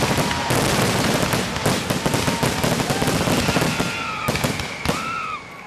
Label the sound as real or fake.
real